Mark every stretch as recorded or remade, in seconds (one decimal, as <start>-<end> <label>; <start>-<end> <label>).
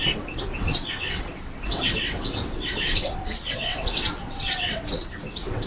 0.0-5.7 remade